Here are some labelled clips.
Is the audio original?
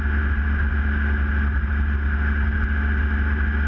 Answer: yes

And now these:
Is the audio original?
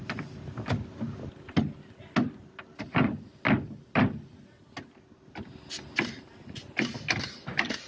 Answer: yes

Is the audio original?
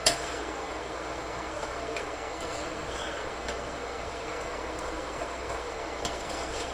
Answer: no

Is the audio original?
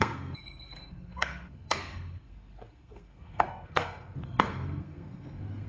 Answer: no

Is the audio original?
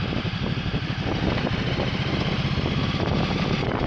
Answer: yes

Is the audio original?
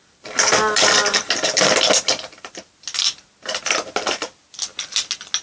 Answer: yes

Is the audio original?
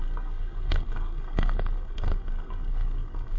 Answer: no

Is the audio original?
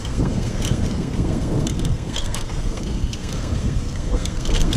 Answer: no